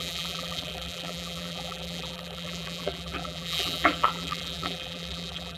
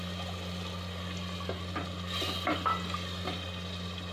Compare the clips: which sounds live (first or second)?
second